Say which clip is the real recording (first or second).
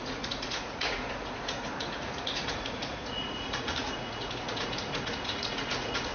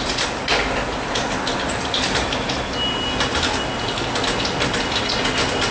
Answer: second